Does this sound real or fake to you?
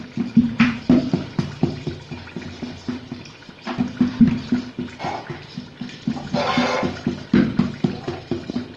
real